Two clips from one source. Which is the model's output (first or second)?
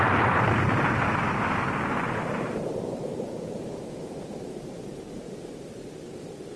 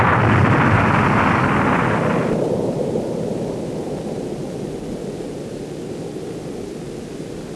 first